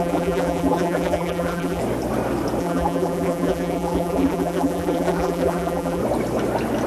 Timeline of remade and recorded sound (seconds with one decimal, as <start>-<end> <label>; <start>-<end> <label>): 0.0-1.8 remade; 1.8-2.6 recorded; 2.6-6.0 remade; 6.0-6.9 recorded

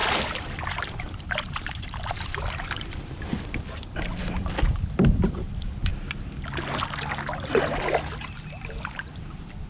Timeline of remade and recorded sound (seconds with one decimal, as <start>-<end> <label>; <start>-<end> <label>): 0.0-5.9 remade; 5.9-9.7 recorded

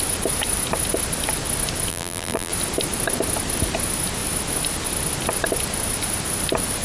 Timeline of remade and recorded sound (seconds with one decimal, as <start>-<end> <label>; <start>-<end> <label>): 0.0-1.9 recorded; 1.9-2.5 remade; 2.5-6.8 recorded